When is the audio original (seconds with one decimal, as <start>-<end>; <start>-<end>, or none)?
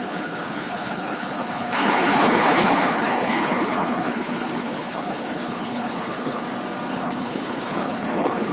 6.4-6.9